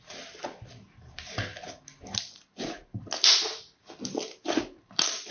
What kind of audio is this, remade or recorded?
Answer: recorded